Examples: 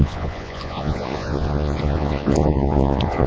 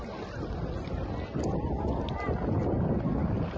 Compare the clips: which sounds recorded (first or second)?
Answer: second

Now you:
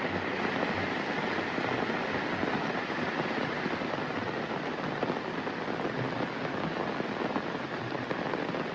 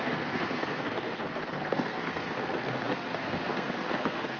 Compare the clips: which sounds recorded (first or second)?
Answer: first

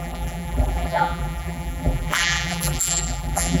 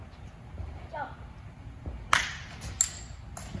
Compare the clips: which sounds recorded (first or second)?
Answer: second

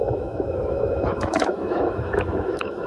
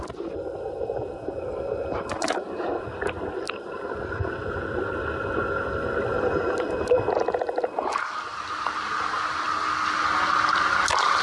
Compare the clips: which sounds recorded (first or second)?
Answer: second